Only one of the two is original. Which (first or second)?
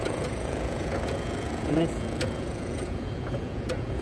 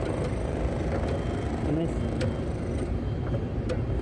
second